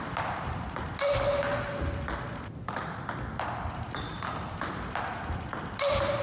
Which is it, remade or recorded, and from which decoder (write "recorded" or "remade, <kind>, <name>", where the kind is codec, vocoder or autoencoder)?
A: recorded